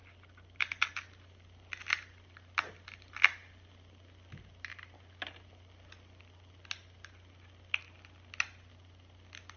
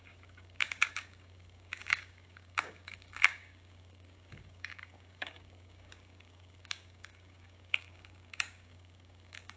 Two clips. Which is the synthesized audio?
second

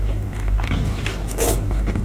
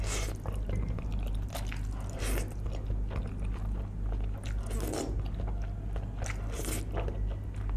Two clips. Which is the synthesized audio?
first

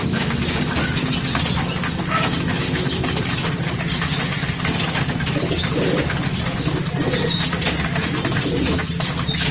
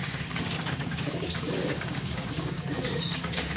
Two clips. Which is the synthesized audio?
second